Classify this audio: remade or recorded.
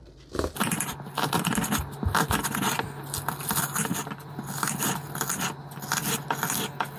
recorded